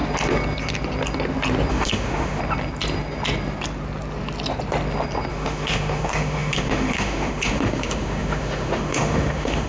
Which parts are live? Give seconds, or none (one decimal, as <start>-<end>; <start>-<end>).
0.0-1.7; 2.4-5.3